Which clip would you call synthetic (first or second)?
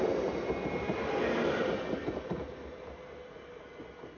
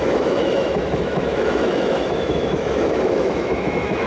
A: second